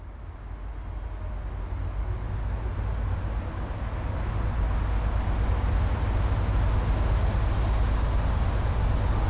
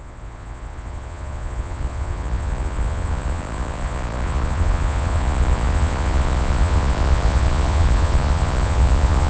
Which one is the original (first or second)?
first